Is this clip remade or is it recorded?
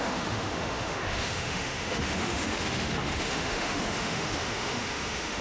remade